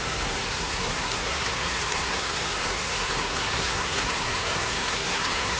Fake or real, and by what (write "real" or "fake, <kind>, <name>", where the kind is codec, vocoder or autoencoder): fake, codec, SNAC